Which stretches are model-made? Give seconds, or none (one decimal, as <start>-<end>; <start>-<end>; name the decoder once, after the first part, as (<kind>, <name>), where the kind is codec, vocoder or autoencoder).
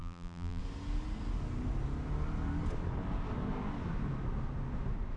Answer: 0.0-0.6 (vocoder, BigVGAN v2)